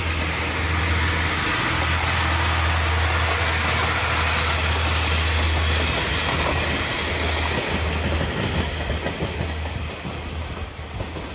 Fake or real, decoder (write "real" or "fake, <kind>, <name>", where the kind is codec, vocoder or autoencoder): real